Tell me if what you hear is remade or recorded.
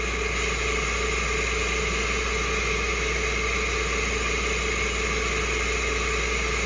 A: recorded